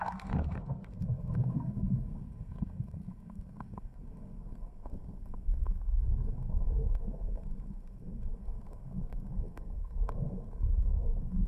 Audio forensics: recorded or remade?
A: remade